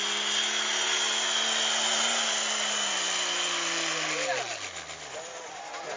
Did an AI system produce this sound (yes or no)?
no